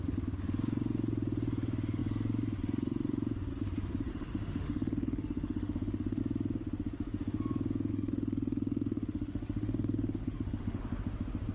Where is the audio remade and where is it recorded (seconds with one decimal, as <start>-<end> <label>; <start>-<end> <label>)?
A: 0.0-4.1 recorded; 4.1-6.2 remade; 6.2-7.9 recorded; 7.9-10.8 remade; 10.8-11.5 recorded